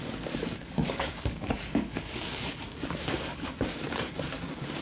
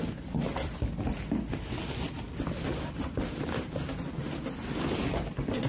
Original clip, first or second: second